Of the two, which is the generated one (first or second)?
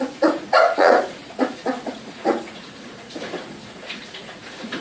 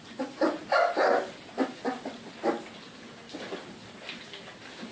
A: first